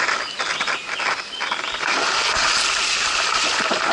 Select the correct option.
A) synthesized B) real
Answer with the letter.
B